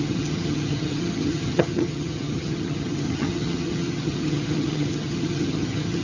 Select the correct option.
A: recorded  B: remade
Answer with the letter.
B